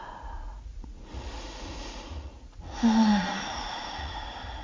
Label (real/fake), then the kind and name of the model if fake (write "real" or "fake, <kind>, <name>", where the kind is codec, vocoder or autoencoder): fake, vocoder, Vocos